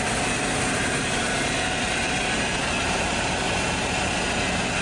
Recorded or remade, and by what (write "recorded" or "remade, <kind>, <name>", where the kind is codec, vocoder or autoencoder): recorded